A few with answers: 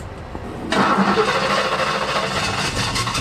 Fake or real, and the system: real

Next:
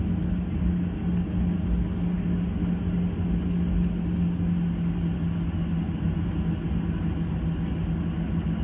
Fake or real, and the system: real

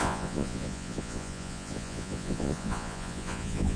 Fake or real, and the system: fake, vocoder, Vocos